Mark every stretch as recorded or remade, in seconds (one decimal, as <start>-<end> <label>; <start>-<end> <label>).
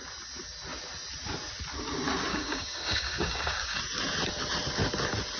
0.0-2.3 recorded; 2.3-3.8 remade; 3.8-5.4 recorded